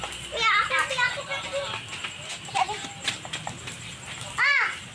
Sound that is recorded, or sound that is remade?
recorded